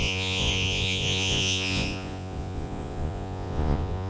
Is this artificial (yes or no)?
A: yes